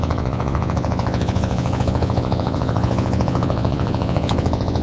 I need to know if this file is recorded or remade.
remade